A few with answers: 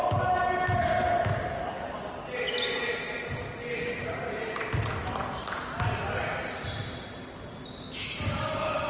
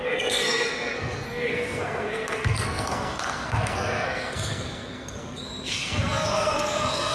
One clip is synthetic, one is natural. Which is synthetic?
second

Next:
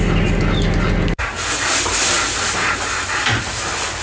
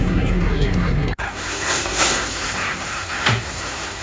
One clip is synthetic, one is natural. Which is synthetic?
second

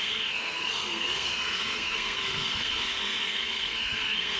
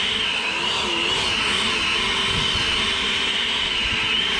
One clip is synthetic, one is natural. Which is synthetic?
first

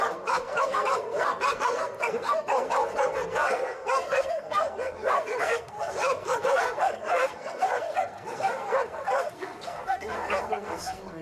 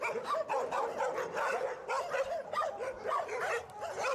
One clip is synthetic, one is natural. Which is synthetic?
first